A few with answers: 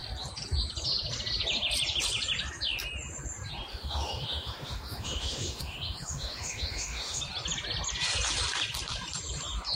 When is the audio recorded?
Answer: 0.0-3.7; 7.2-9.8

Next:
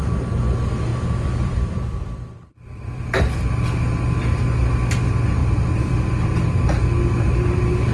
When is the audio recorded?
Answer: 0.0-0.9; 3.4-5.4; 5.9-7.9